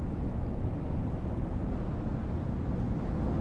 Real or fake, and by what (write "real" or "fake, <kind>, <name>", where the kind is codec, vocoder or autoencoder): real